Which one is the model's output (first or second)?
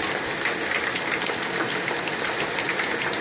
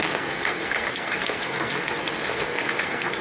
second